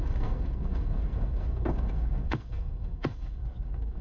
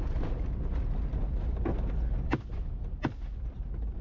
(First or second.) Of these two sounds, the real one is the second